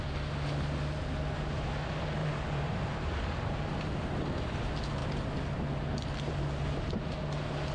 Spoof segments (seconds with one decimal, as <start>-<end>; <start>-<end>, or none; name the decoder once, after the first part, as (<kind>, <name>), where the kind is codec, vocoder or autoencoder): 2.2-3.8 (vocoder, BigVGAN v2)